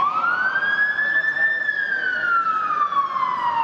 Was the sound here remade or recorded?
recorded